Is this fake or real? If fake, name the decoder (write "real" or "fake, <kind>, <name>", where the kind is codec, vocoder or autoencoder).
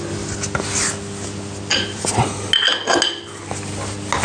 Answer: real